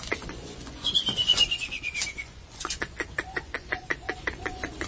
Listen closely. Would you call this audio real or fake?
fake